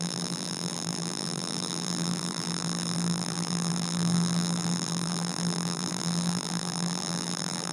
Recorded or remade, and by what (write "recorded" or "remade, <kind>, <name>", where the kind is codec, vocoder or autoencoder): remade, vocoder, BigVGAN v2